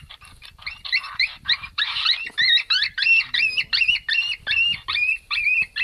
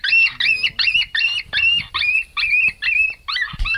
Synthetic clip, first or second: first